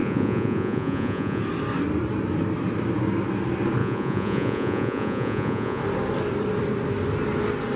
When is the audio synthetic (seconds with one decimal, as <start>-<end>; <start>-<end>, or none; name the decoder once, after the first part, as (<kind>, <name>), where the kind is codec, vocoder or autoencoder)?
0.0-1.4 (vocoder, Vocos); 3.8-5.8